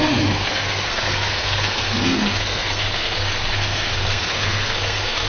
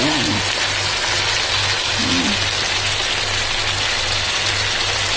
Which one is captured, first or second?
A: second